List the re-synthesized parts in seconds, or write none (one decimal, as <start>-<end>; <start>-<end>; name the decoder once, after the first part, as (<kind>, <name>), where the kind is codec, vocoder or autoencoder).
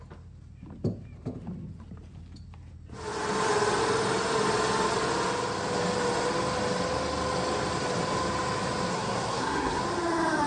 8.9-9.8 (codec, SNAC)